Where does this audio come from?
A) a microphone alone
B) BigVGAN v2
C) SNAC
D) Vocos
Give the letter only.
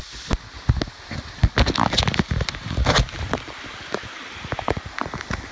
A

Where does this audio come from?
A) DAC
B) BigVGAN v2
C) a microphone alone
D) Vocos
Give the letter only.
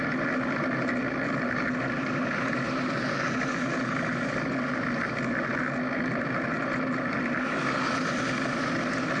C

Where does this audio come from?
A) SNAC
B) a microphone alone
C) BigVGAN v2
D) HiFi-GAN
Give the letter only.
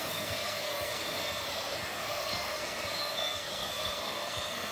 A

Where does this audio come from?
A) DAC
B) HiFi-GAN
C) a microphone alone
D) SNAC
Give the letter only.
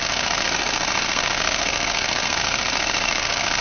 D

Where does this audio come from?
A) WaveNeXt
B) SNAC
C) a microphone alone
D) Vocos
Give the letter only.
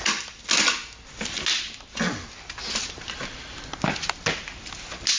C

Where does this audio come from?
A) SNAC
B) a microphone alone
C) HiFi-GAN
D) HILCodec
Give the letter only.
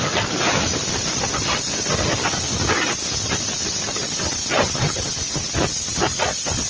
B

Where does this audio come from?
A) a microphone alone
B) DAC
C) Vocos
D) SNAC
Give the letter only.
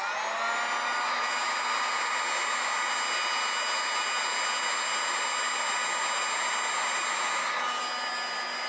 A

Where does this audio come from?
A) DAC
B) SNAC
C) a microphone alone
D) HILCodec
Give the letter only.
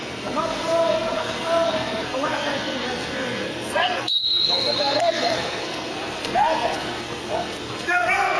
B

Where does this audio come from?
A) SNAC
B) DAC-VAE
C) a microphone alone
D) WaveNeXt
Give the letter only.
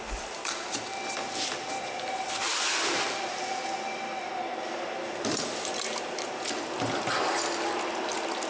C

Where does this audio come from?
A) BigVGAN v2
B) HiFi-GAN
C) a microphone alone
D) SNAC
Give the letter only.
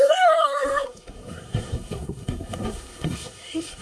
D